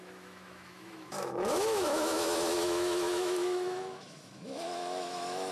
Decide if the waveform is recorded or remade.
remade